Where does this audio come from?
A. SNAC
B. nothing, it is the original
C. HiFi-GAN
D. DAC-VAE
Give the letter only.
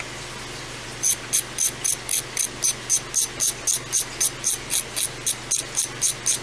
B